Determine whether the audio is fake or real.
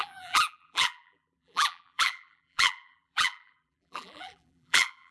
fake